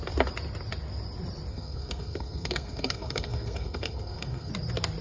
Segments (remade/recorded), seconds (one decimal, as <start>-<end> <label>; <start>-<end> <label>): 0.0-1.5 recorded; 1.5-4.5 remade; 4.5-5.0 recorded